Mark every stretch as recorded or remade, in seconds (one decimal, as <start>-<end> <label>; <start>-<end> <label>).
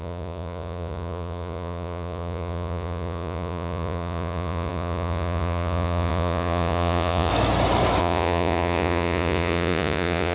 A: 0.0-7.3 remade; 7.3-8.0 recorded; 8.0-10.3 remade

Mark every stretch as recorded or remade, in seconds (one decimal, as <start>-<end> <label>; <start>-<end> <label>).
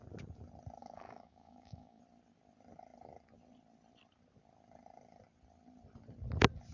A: 0.0-0.8 recorded; 0.8-2.0 remade; 2.0-6.7 recorded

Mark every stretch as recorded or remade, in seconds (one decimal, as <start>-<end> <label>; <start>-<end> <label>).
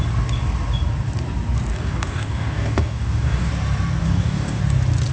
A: 0.0-1.7 recorded; 1.7-3.5 remade; 3.5-4.0 recorded; 4.0-4.6 remade; 4.6-5.1 recorded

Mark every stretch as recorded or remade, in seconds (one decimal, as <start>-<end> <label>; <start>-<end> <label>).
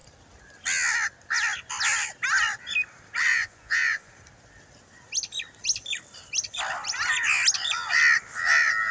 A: 0.0-3.3 recorded; 3.3-4.1 remade; 4.1-8.9 recorded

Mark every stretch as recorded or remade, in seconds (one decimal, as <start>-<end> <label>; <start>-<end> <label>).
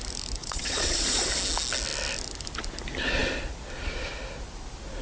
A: 0.0-0.4 recorded; 0.4-1.3 remade; 1.3-5.0 recorded